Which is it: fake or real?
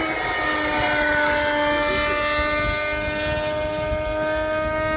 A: real